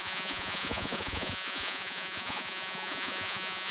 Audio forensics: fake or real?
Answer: fake